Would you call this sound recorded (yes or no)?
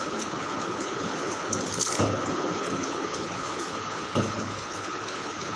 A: no